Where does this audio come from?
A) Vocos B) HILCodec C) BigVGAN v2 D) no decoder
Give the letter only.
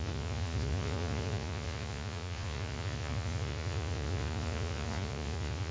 A